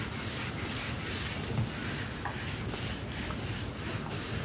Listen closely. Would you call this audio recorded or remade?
recorded